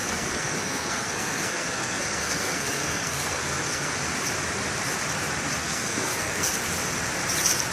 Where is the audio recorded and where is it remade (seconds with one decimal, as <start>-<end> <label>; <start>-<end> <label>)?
0.0-3.9 remade; 3.9-5.6 recorded; 5.6-6.5 remade; 6.5-7.7 recorded